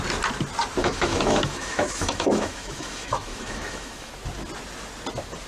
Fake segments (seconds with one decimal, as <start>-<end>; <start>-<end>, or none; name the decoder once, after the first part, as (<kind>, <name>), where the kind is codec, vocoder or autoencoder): 0.8-4.1 (autoencoder, DAC-VAE)